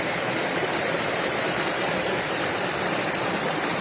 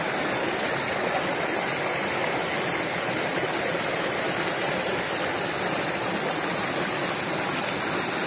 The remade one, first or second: first